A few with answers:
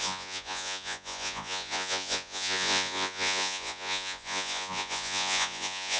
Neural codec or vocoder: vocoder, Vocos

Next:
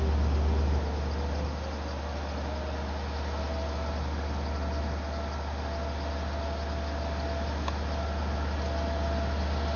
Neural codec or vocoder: none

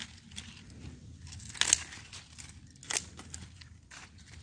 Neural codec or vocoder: none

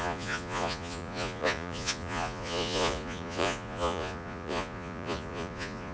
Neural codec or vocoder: vocoder, Vocos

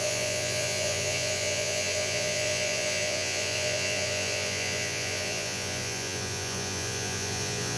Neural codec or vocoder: vocoder, Vocos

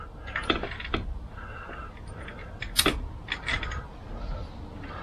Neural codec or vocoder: none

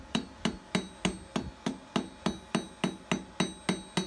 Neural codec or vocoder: none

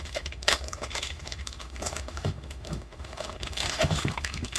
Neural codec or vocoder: autoencoder, DAC-VAE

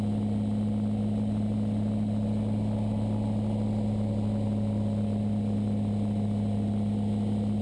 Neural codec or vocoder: none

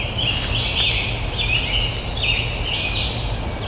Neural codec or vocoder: none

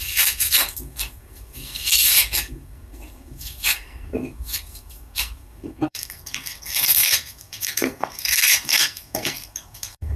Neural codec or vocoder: codec, SNAC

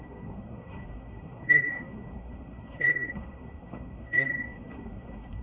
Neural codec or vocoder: codec, SNAC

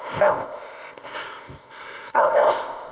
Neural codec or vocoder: codec, ZipCodec